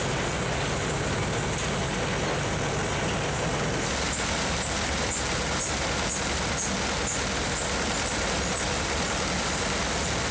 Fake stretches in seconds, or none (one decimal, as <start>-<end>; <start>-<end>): none

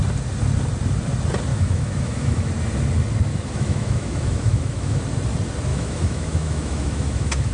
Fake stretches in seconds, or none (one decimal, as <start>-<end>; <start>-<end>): 1.5-2.5; 3.3-5.0; 5.7-7.5

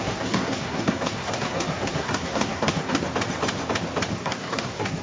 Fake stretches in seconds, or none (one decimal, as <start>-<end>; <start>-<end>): 0.0-3.0; 4.1-5.0

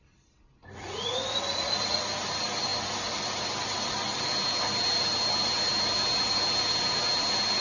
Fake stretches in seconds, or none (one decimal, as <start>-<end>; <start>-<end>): 0.6-2.0

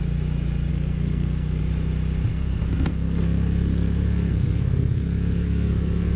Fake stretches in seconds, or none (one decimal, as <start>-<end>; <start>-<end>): 0.7-1.6; 2.3-6.2